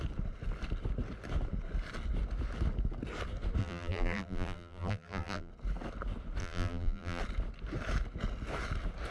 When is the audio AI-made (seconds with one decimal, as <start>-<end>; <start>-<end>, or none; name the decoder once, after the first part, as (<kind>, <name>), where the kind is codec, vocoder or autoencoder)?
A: 3.6-5.5 (vocoder, BigVGAN v2); 6.4-7.2